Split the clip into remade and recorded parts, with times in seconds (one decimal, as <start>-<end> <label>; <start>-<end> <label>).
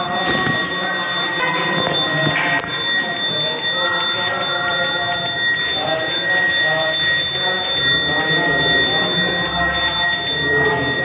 0.0-11.0 recorded